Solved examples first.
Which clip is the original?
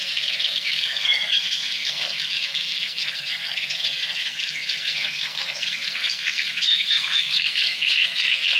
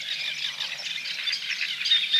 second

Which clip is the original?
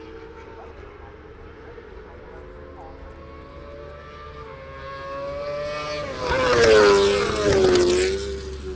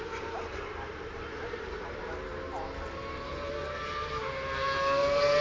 first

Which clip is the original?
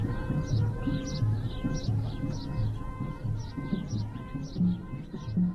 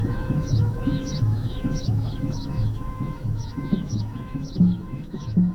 first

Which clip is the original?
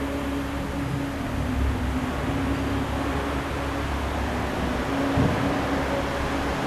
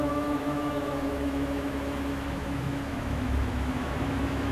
first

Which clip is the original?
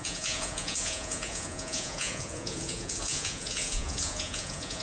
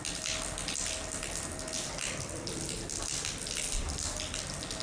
second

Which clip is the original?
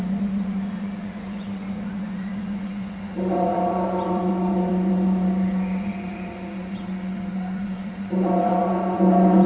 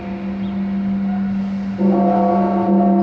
second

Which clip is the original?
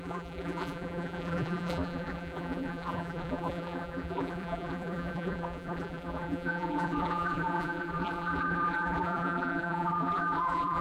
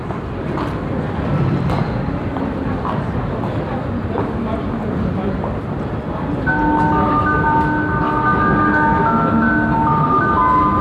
second